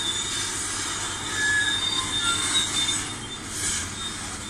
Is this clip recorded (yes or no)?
yes